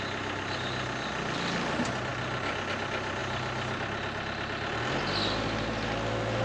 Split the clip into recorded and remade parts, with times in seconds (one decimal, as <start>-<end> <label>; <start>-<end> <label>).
0.0-6.4 recorded